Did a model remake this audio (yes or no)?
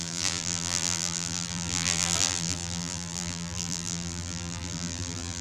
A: yes